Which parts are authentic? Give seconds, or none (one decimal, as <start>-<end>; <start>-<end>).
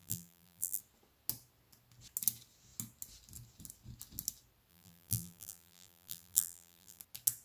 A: 0.8-4.7; 7.0-7.4